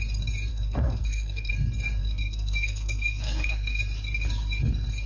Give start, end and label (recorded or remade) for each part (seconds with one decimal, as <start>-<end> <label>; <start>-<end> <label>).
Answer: 0.0-0.5 recorded; 0.5-1.5 remade; 1.5-2.0 recorded; 2.0-3.8 remade; 3.8-5.1 recorded